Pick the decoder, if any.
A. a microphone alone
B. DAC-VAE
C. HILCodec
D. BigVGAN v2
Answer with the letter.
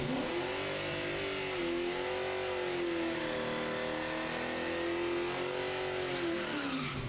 A